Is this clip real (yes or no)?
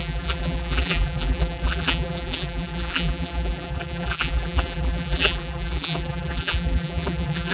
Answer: no